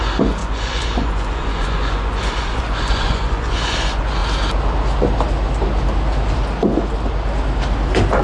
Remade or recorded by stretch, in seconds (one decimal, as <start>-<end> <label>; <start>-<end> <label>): 0.0-4.2 remade; 4.2-8.2 recorded